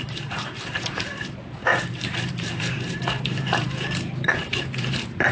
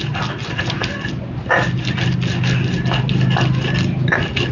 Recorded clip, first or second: second